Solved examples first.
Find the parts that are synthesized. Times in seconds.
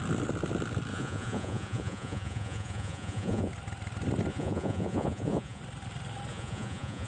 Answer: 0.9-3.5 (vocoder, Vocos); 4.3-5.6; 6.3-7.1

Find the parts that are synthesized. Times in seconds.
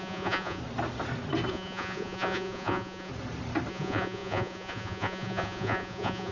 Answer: 0.0-0.6 (vocoder, Vocos); 1.5-3.1; 3.7-6.3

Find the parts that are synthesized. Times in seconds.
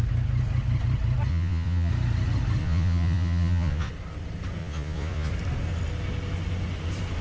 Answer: 1.3-1.9 (vocoder, Vocos); 2.6-3.9; 4.6-5.3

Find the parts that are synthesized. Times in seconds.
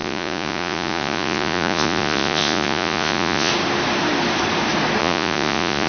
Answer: 0.0-3.5 (vocoder, Vocos); 5.0-5.9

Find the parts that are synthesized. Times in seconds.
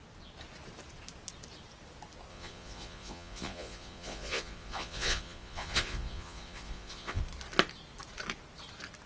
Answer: 2.3-7.2 (vocoder, Vocos)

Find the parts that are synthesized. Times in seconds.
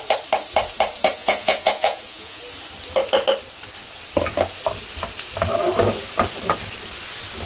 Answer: 1.2-2.4 (vocoder, Vocos)